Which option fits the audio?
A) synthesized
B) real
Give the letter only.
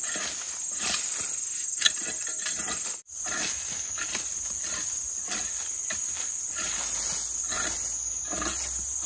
B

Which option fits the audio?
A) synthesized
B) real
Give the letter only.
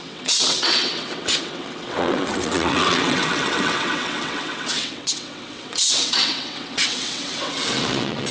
A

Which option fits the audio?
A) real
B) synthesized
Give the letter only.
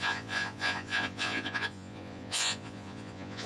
B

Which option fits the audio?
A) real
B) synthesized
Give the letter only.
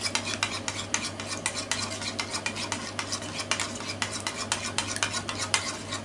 A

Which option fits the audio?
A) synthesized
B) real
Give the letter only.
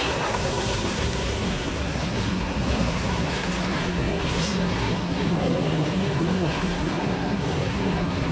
A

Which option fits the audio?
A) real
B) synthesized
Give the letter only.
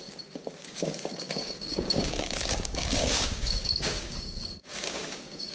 B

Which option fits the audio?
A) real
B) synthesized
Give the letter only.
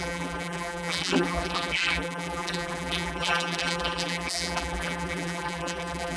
B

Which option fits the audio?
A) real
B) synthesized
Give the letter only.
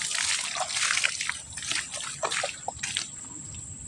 A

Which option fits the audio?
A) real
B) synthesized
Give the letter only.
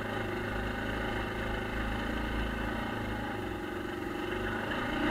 A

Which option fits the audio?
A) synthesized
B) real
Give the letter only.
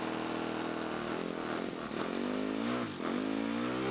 B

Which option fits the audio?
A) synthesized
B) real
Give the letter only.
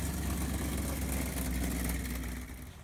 B